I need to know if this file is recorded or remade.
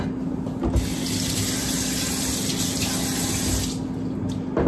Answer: recorded